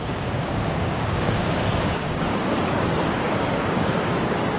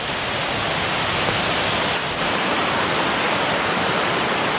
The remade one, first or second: first